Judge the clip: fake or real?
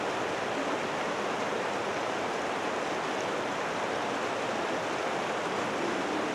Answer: real